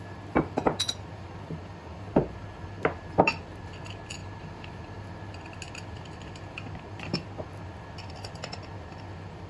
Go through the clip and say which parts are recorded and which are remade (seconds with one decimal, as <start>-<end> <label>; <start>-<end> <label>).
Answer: 0.0-9.5 recorded

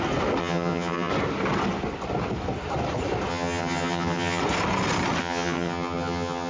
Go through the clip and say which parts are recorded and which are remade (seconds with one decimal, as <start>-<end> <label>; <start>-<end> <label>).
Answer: 0.0-0.4 recorded; 0.4-1.1 remade; 1.1-3.3 recorded; 3.3-4.4 remade; 4.4-5.2 recorded; 5.2-6.5 remade

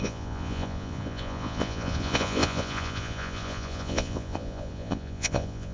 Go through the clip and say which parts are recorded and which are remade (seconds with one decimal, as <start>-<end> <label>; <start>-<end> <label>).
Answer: 0.0-5.7 remade

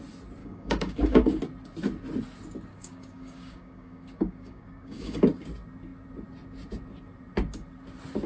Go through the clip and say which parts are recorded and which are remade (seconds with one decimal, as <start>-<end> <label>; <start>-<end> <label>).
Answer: 0.0-0.4 recorded; 0.4-1.4 remade; 1.4-2.7 recorded; 2.7-5.2 remade; 5.2-8.3 recorded